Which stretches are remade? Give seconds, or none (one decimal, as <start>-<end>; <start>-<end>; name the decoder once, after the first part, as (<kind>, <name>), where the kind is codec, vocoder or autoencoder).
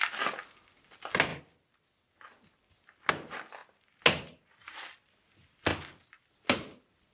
5.7-6.3 (vocoder, BigVGAN v2)